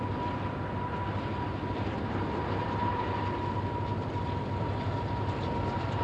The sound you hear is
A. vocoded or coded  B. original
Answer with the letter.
B